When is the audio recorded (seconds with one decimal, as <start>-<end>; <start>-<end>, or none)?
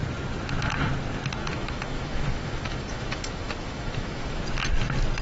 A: 0.0-1.4; 4.4-5.2